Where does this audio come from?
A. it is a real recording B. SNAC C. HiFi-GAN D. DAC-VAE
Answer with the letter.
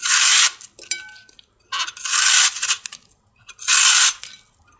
A